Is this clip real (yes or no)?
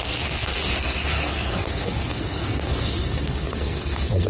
no